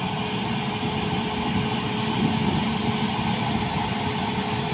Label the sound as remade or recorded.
recorded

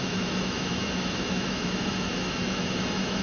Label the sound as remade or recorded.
remade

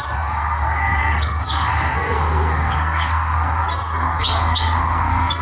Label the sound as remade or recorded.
remade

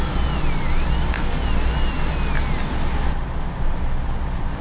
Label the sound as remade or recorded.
recorded